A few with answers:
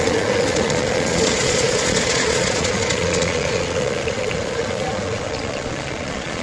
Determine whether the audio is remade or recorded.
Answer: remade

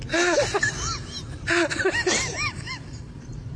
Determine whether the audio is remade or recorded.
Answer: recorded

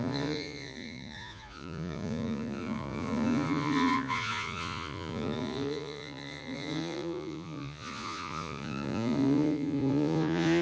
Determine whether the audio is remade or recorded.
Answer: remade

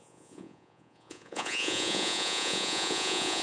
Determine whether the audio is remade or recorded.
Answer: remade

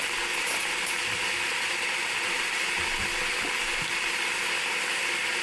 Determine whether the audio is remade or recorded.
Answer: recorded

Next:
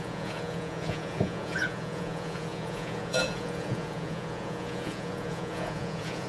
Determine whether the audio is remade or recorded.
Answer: remade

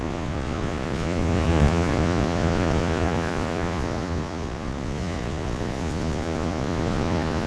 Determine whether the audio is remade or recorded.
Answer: remade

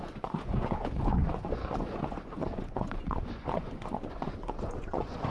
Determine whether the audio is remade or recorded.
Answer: remade